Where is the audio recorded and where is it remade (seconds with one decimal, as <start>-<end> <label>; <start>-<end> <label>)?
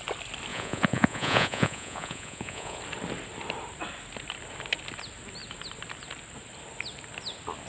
0.0-0.5 recorded; 0.5-2.8 remade; 2.8-7.7 recorded